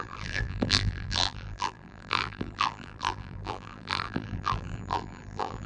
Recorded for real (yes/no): no